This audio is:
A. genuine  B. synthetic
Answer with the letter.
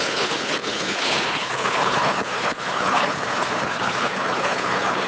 B